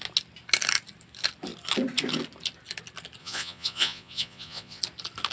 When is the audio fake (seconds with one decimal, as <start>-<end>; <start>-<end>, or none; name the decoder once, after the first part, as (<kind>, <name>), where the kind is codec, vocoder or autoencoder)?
3.2-4.8 (vocoder, Vocos)